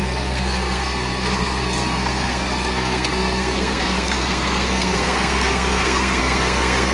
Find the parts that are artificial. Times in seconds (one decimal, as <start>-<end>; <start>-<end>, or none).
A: 0.0-6.9